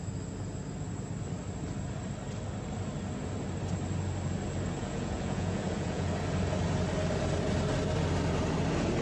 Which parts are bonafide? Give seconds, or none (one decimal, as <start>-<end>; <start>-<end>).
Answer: 0.0-4.8; 6.1-9.0